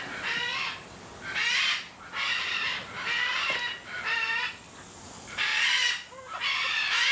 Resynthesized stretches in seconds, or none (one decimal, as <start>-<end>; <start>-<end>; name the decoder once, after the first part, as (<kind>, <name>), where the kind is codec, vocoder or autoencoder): 0.0-0.5 (vocoder, BigVGAN v2); 2.6-5.5